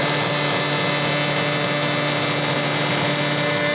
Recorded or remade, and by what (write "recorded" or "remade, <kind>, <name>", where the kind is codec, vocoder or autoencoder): recorded